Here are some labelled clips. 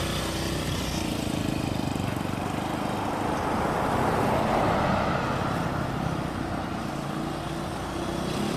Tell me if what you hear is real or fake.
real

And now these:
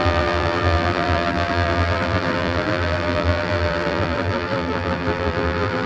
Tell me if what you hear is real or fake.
fake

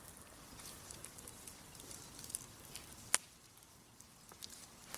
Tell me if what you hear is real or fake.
real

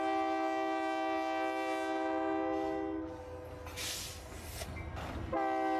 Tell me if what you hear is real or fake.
real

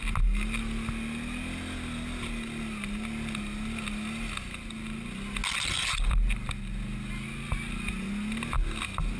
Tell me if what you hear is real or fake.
real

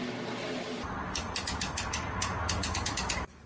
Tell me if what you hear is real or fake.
real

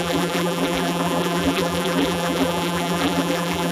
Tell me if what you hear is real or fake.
fake